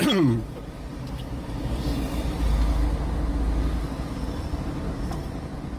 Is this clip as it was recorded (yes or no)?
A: yes